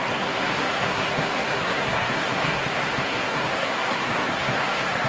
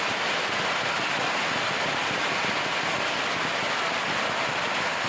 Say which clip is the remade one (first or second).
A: first